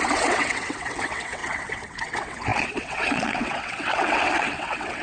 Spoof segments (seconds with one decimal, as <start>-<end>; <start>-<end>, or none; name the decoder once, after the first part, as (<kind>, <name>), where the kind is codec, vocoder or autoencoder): 0.0-5.0 (vocoder, WaveNeXt)